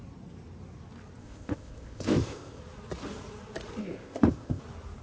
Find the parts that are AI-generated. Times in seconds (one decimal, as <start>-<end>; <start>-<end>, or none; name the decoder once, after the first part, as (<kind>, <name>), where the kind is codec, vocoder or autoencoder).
1.2-2.6 (codec, ZipCodec); 3.8-4.6